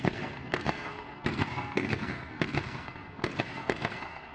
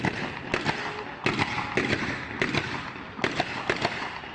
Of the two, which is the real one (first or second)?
second